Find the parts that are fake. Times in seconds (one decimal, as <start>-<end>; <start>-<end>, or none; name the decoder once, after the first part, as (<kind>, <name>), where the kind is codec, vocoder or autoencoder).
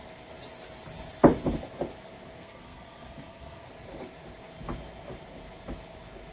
2.4-3.7 (codec, SNAC)